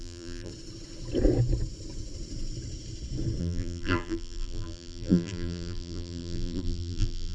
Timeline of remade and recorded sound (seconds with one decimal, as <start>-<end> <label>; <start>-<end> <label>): 0.0-0.5 remade; 0.5-3.4 recorded; 3.4-7.3 remade